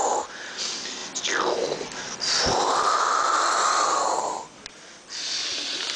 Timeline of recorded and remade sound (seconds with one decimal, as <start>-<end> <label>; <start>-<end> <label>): 0.0-6.0 recorded